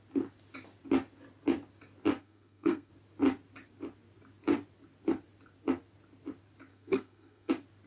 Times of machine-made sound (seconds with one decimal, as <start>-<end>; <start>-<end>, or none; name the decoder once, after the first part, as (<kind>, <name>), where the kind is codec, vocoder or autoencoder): 2.2-2.9 (codec, SNAC); 6.7-7.5